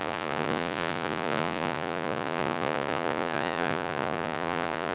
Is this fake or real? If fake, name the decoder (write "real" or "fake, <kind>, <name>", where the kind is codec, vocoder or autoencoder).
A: fake, vocoder, Vocos